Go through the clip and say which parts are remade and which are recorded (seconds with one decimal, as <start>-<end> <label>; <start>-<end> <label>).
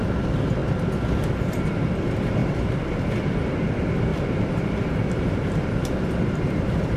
0.0-2.4 recorded; 2.4-2.9 remade; 2.9-4.1 recorded; 4.1-7.0 remade